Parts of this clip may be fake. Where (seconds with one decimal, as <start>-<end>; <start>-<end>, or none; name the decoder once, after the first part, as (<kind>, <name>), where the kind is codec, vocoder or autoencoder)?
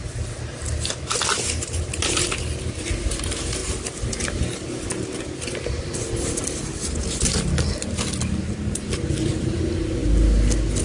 none